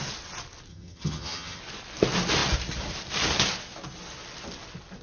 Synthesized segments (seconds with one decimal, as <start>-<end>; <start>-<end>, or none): 0.7-1.6